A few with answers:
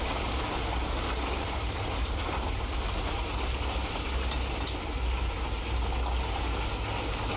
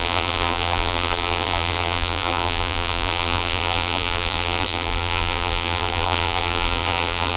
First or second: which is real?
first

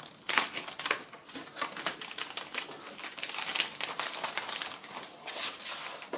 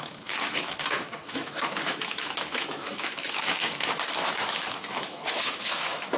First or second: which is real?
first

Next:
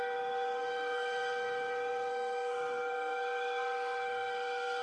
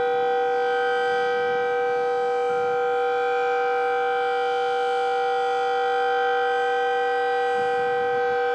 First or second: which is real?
second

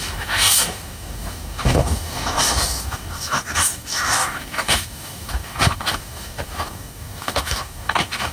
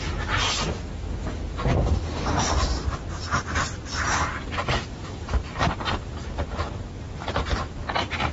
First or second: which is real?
second